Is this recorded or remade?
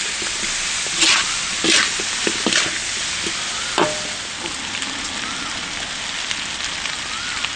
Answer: recorded